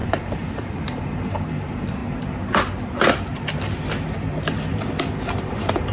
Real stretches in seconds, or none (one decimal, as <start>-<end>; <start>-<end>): 2.0-5.5